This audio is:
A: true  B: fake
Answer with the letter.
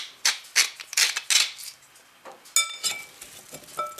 A